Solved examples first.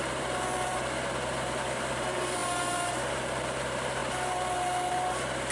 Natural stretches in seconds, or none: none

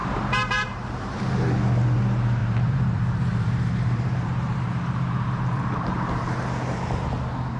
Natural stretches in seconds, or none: 1.2-2.4; 6.3-7.6

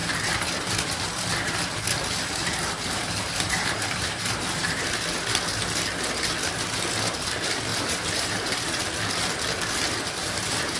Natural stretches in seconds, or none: 0.0-2.4; 5.0-7.7; 8.8-10.2

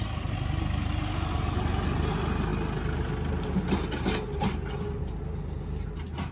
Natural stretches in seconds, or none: 0.0-6.3

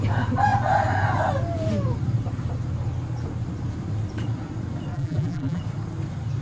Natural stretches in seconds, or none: 0.0-4.9; 5.6-6.4